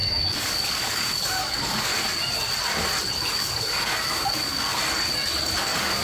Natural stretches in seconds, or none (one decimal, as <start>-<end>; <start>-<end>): 1.9-3.3; 4.8-5.6